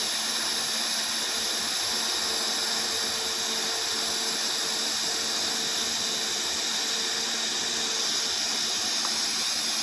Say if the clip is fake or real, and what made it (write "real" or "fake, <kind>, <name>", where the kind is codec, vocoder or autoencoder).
real